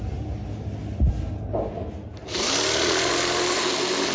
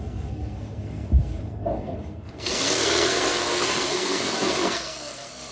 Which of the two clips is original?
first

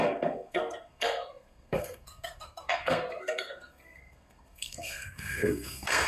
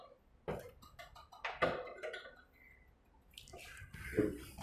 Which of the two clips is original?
second